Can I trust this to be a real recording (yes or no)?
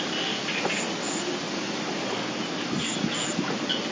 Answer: yes